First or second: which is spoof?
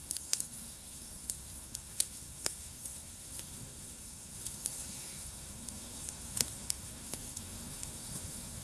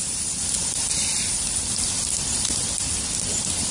first